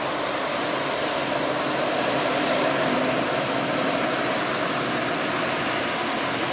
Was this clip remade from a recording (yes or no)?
no